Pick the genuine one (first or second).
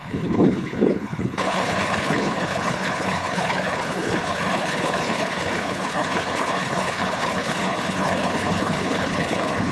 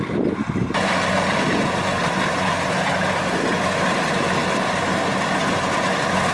second